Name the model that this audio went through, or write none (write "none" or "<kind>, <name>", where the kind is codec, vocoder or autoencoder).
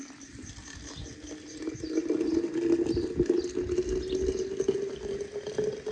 none